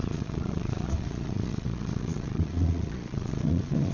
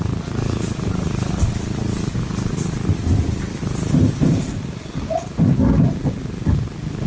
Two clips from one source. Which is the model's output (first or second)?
first